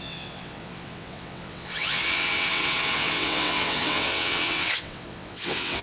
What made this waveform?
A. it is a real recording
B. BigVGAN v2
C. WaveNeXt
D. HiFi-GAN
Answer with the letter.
C